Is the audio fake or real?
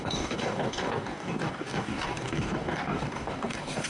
fake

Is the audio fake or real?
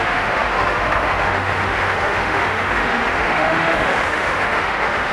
fake